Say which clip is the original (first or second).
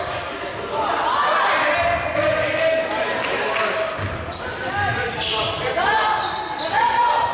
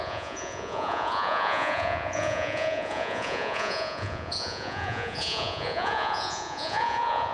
first